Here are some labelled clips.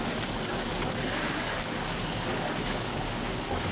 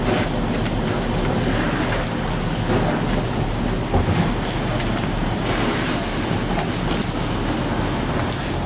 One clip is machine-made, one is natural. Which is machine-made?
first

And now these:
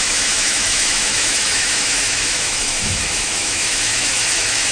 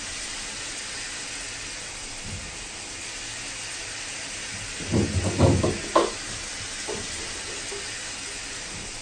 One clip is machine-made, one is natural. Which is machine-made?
first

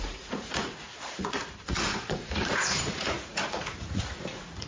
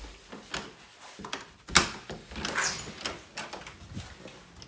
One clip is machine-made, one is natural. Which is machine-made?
first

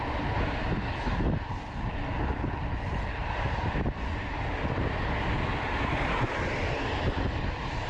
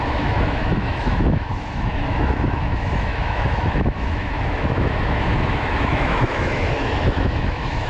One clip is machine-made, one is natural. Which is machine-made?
second